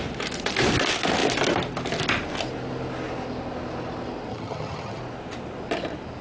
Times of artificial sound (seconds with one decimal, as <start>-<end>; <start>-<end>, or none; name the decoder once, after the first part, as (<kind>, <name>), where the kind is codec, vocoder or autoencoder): 4.3-5.0 (vocoder, HiFi-GAN)